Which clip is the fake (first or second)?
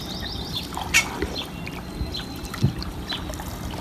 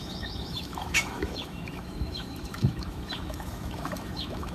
second